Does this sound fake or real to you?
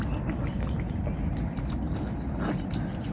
real